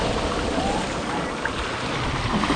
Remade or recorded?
recorded